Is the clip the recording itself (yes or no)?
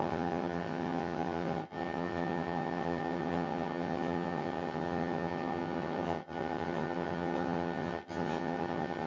no